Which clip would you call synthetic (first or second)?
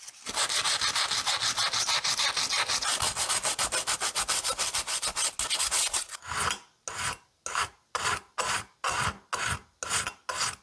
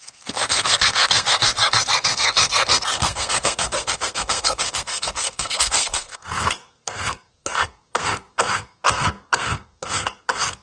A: second